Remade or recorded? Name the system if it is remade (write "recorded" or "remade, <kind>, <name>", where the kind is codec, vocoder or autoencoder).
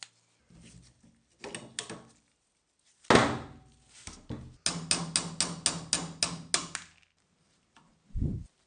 recorded